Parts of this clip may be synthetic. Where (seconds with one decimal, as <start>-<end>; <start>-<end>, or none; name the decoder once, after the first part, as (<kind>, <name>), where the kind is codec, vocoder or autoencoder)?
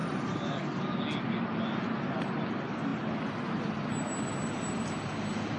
0.0-0.8 (vocoder, BigVGAN v2)